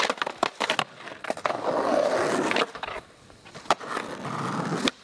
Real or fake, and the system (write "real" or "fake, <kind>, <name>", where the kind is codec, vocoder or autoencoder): real